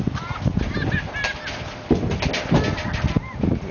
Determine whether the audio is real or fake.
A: real